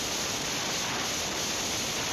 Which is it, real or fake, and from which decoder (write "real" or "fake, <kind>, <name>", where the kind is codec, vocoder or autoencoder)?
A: real